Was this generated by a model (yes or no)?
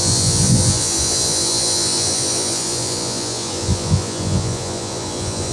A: yes